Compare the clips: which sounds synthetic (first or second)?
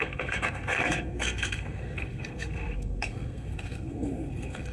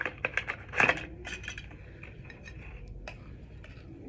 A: first